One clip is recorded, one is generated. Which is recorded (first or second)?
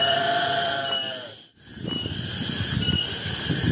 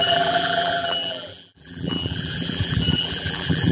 first